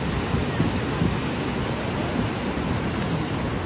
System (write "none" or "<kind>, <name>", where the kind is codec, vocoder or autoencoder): none